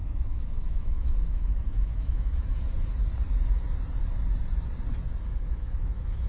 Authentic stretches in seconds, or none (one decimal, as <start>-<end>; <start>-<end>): 2.5-5.3